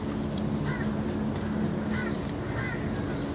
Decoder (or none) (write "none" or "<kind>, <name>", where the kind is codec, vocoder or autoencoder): none